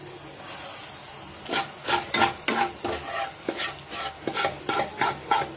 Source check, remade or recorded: recorded